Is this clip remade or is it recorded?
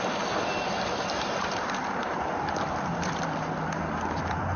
remade